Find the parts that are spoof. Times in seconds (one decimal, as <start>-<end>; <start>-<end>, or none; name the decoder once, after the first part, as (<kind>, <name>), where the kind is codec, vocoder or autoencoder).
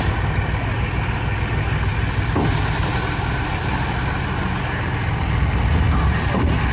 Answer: none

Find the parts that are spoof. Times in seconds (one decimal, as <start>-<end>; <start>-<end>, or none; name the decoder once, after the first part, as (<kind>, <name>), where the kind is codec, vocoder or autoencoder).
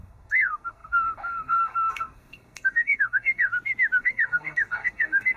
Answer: 0.0-3.5 (codec, SNAC); 4.0-5.4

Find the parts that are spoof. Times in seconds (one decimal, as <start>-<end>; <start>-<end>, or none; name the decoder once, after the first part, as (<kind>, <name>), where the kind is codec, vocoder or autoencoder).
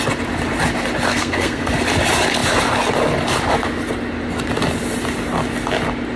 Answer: 1.1-1.7 (codec, SNAC)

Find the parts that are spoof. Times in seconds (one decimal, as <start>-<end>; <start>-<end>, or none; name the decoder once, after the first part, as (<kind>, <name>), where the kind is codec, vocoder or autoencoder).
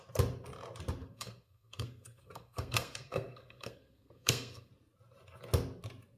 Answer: 1.0-4.7 (codec, SNAC)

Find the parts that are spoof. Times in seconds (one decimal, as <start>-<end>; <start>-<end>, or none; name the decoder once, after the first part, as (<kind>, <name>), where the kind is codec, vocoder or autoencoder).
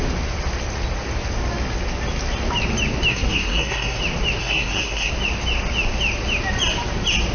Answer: 3.1-4.0 (codec, SNAC); 4.4-5.1